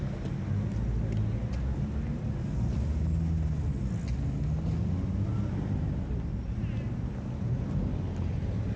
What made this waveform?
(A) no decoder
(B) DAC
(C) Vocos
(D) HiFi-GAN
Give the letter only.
A